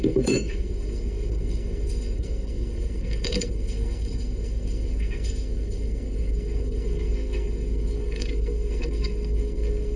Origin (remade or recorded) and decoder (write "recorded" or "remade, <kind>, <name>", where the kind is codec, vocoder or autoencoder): remade, codec, SNAC